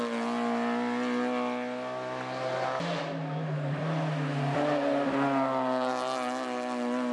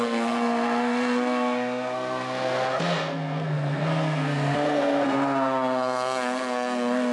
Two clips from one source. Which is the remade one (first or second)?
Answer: second